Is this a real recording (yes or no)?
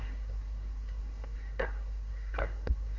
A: no